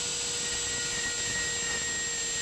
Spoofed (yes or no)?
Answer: no